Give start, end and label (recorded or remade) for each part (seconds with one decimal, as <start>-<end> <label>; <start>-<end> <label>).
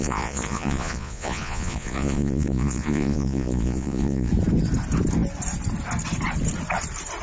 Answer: 0.0-4.3 remade; 4.3-7.2 recorded